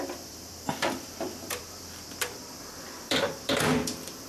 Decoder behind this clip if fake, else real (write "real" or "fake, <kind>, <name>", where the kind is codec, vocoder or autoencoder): fake, vocoder, BigVGAN v2